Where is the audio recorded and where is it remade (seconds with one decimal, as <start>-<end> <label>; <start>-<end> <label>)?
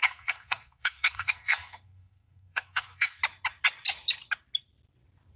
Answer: 0.0-3.2 remade; 3.2-5.4 recorded